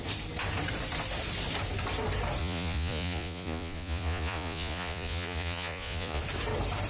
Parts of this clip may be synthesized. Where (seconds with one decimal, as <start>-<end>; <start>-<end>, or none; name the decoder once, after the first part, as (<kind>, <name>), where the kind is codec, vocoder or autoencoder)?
2.4-6.2 (vocoder, Vocos)